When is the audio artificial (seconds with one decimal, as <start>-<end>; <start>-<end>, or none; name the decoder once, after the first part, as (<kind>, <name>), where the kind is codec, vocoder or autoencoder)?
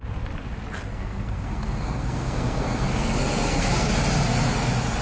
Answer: 0.9-3.9 (codec, SNAC)